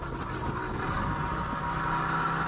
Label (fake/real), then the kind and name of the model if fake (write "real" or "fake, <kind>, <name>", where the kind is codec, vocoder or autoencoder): real